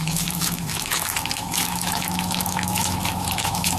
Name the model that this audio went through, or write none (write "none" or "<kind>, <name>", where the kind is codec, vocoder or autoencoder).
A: autoencoder, DAC-VAE